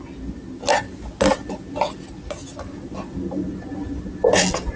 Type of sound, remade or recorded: recorded